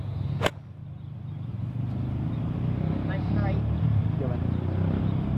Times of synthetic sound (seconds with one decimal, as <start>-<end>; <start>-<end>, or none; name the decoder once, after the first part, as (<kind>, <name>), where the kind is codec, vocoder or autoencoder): none